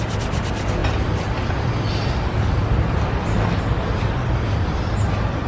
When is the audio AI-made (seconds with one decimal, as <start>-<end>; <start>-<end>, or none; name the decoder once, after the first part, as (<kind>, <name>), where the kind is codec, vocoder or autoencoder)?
none